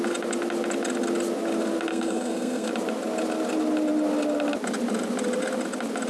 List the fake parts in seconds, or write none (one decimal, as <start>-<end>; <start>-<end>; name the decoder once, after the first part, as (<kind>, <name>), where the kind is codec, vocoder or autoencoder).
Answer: 1.9-2.7 (codec, SNAC)